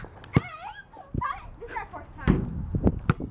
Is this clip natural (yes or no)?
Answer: yes